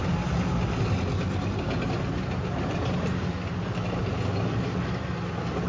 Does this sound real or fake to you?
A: real